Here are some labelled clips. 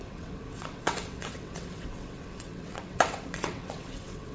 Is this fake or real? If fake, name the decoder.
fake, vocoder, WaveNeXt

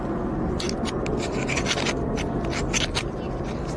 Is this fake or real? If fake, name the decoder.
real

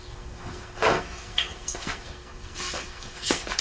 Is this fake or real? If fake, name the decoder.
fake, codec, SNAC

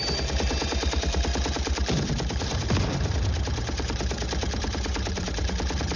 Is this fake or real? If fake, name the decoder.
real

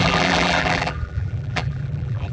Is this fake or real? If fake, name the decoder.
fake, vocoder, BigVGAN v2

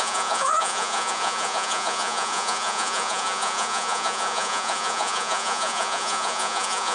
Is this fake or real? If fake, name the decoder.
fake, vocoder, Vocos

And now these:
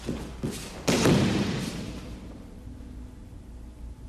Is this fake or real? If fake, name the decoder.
real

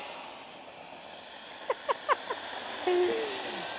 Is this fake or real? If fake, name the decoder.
real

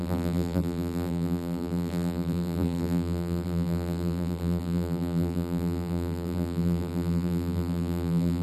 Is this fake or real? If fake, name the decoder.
fake, vocoder, BigVGAN v2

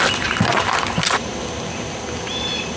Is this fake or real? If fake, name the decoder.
fake, vocoder, BigVGAN v2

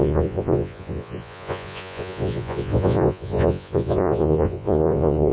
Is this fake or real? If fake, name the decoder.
fake, vocoder, Vocos